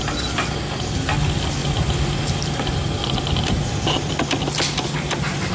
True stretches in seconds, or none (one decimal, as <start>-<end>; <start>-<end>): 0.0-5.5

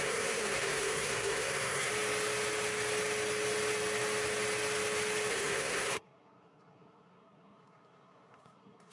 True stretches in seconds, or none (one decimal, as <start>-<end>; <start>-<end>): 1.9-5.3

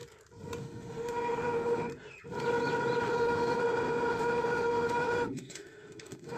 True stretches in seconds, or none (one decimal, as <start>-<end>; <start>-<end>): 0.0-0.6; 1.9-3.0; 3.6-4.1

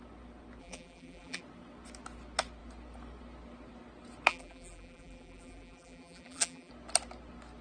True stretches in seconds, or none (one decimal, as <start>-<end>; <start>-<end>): 0.0-0.6; 1.4-4.3; 6.7-7.6

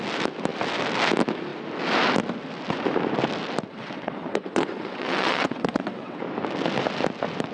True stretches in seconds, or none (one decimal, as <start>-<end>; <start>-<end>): 0.0-3.7; 6.2-7.5

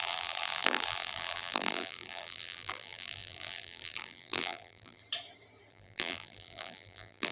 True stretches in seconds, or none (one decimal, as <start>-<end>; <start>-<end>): 5.0-5.7

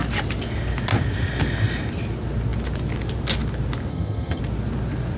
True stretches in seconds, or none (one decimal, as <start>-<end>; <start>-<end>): 0.0-3.9; 4.4-5.2